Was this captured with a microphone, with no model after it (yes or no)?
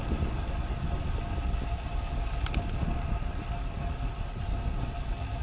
yes